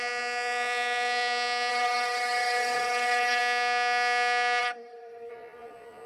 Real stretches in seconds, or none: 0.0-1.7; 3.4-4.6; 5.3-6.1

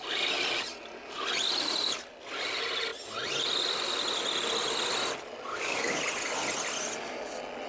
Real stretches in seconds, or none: 0.0-5.5; 6.0-7.7